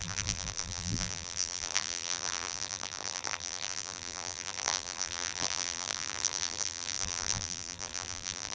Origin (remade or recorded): remade